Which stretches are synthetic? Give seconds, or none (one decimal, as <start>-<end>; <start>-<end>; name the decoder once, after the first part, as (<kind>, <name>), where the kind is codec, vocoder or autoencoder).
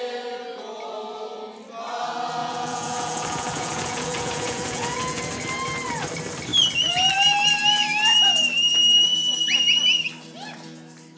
2.4-5.2 (vocoder, Vocos)